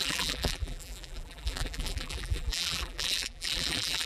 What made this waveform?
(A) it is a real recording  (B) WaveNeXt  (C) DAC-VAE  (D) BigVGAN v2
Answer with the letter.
D